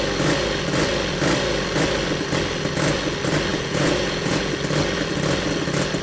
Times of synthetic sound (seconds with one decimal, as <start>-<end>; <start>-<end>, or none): 3.5-4.5